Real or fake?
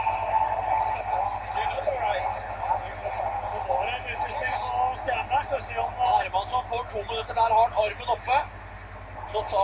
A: real